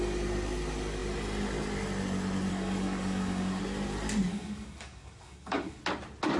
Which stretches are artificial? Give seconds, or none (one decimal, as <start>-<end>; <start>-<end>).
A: 2.5-3.6; 4.3-5.8